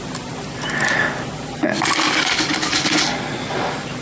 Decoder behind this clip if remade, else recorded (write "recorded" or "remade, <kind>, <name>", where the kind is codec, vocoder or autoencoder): recorded